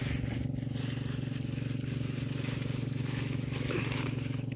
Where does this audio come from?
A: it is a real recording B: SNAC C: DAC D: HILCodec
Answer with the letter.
A